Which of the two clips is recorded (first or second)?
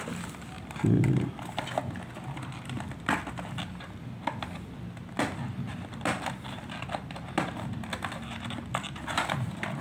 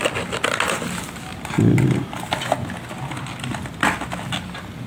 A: second